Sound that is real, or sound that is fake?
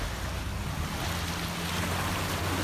real